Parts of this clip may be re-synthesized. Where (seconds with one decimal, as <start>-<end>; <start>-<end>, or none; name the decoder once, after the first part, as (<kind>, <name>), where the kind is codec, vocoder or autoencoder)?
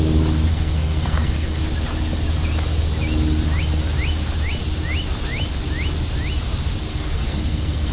0.5-1.6 (codec, SNAC); 6.9-7.9